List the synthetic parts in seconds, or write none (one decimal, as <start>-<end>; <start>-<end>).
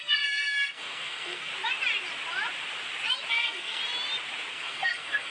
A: 0.0-1.5; 3.3-3.8; 4.5-5.3